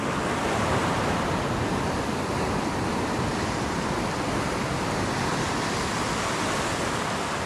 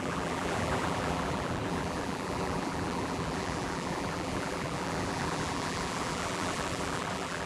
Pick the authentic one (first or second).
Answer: first